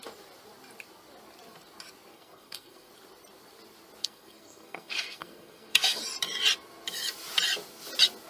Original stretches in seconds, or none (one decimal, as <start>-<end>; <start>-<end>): 0.0-2.1; 2.9-4.0; 6.0-8.3